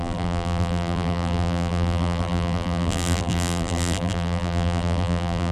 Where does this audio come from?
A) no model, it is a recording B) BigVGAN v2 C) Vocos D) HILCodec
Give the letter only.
B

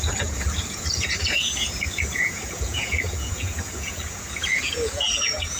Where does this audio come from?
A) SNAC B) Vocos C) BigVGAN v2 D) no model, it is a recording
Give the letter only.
B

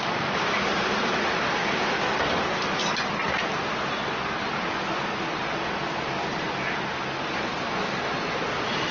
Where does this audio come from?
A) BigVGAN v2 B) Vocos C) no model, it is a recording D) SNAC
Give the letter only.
C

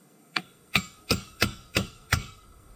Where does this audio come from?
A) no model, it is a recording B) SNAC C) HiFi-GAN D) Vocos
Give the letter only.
B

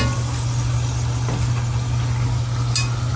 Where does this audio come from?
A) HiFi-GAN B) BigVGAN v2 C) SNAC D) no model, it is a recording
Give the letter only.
D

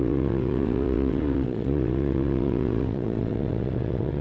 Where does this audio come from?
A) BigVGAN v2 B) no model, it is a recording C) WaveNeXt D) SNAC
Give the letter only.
C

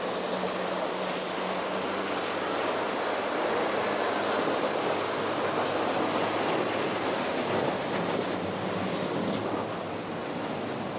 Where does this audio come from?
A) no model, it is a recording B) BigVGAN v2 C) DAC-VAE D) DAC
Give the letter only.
A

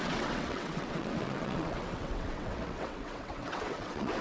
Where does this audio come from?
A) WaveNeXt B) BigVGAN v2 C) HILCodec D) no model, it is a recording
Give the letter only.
A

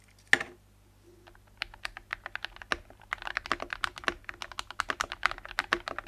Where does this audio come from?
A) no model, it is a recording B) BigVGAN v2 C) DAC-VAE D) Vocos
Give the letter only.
A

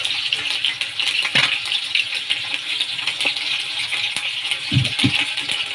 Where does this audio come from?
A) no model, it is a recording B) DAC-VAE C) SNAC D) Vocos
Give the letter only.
A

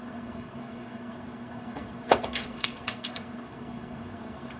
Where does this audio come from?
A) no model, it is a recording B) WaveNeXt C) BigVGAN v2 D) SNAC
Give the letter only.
D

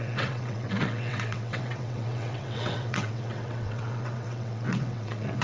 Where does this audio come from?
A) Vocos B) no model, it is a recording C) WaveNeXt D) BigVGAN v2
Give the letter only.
C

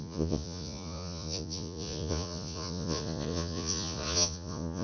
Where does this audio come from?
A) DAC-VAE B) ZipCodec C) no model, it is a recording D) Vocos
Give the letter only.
D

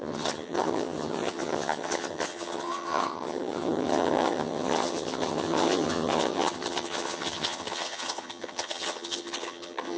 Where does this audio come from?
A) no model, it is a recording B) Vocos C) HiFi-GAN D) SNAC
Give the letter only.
C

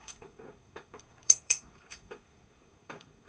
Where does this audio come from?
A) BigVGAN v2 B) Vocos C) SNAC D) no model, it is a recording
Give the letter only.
C